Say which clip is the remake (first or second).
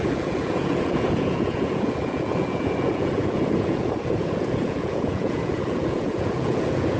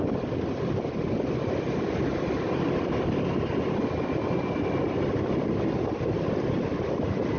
first